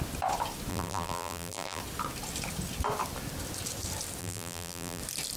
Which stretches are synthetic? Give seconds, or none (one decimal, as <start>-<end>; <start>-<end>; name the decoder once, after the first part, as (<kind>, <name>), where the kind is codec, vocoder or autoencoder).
0.7-1.8 (vocoder, BigVGAN v2); 4.2-5.0